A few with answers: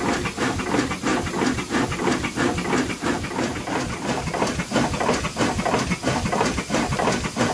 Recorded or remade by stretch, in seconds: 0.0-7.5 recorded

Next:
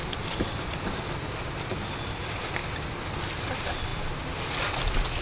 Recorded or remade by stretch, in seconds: 0.0-5.2 recorded

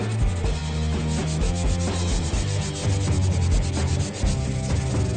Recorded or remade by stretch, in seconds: 0.0-5.2 recorded

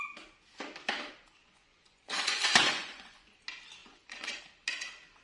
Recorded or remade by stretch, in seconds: 0.0-1.4 recorded; 1.4-3.4 remade; 3.4-3.8 recorded; 3.8-4.4 remade; 4.4-5.2 recorded